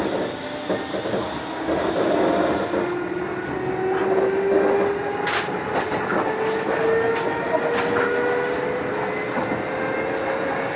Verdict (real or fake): real